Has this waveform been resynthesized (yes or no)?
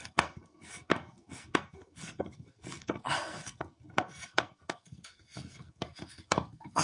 yes